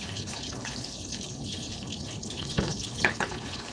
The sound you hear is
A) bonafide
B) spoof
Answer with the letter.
B